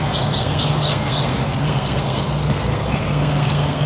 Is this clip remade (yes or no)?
yes